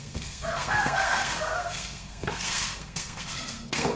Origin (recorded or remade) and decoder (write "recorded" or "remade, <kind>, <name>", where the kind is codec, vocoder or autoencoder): remade, codec, SNAC